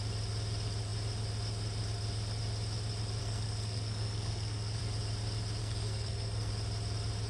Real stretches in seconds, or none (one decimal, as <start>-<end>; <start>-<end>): 0.0-3.2; 4.8-5.6; 6.5-7.3